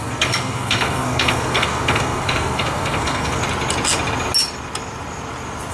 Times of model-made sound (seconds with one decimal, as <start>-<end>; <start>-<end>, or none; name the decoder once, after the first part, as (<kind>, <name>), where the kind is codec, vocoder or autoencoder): 0.0-3.4 (codec, SNAC)